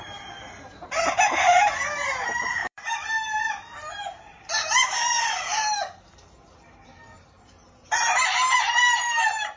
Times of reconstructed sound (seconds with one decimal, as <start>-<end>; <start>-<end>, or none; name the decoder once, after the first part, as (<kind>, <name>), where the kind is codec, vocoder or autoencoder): 0.0-9.6 (vocoder, BigVGAN v2)